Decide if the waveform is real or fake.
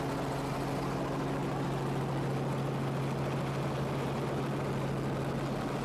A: real